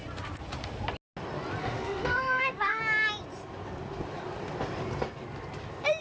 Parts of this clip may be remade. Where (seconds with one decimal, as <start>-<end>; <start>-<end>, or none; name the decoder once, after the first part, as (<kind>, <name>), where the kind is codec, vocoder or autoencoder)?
1.6-2.8 (autoencoder, DAC-VAE)